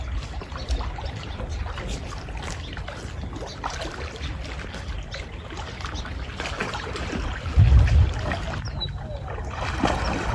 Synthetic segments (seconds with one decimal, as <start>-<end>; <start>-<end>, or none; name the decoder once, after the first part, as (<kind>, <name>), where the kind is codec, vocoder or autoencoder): 6.6-7.3 (vocoder, BigVGAN v2)